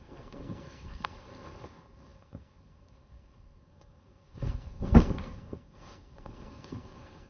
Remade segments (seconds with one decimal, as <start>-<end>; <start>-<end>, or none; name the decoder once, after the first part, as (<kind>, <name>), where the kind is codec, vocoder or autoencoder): 0.0-7.3 (codec, SNAC)